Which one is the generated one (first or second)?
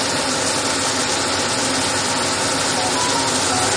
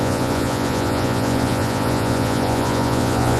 second